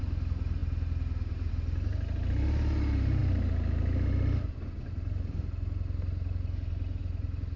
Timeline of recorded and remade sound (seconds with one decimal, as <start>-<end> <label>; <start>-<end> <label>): 0.0-7.6 recorded

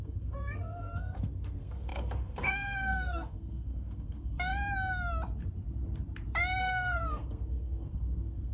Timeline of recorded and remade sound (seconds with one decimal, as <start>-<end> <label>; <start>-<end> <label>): 0.0-4.5 remade; 4.5-6.6 recorded; 6.6-8.5 remade

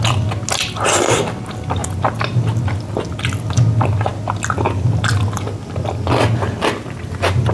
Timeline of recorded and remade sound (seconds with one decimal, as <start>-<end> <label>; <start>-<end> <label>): 0.0-7.5 recorded

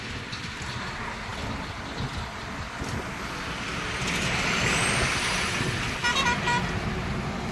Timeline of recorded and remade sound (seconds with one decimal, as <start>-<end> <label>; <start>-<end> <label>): 0.0-7.5 recorded